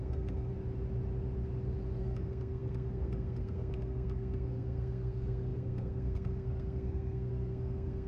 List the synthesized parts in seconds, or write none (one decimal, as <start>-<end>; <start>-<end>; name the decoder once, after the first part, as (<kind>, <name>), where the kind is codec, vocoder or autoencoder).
0.0-0.5 (codec, SNAC); 2.0-8.1